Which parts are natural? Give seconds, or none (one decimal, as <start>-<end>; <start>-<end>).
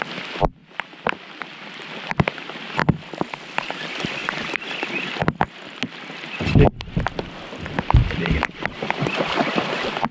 0.0-10.1